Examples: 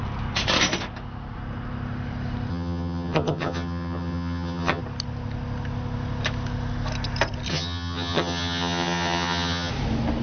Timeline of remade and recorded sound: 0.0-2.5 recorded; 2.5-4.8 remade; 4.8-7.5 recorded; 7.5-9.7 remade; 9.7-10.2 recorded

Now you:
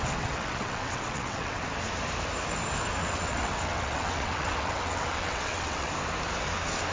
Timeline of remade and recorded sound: 0.0-1.6 remade; 1.6-3.0 recorded; 3.0-5.9 remade; 5.9-6.9 recorded

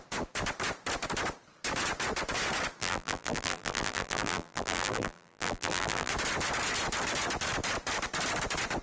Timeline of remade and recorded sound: 0.0-2.8 recorded; 2.8-6.1 remade; 6.1-8.8 recorded

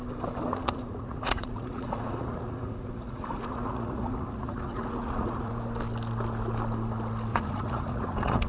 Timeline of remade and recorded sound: 0.0-0.5 recorded; 0.5-5.5 remade; 5.5-7.3 recorded; 7.3-8.5 remade

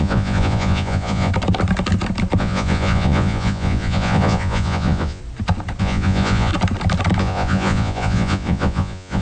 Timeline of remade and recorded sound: 0.0-1.3 remade; 1.3-2.4 recorded; 2.4-5.2 remade; 5.2-5.8 recorded; 5.8-6.5 remade; 6.5-7.2 recorded; 7.2-9.2 remade

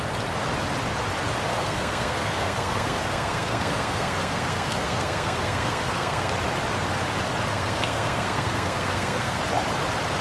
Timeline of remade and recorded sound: 0.0-1.5 recorded; 1.5-6.3 remade; 6.3-7.5 recorded; 7.5-9.4 remade; 9.4-10.2 recorded